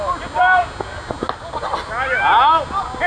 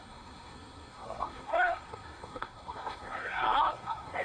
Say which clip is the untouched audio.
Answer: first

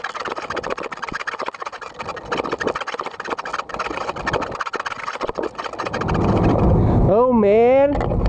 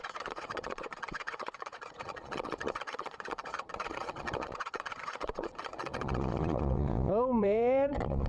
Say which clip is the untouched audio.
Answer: first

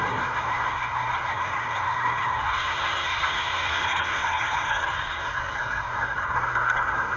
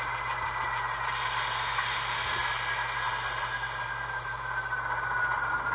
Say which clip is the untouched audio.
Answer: second